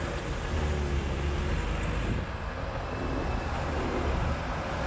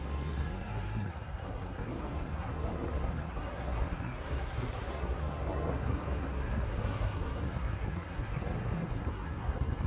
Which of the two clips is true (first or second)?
first